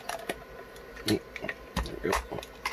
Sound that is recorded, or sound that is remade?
recorded